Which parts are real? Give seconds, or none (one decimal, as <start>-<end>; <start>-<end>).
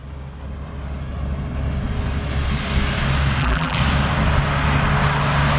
0.0-3.4; 3.8-5.6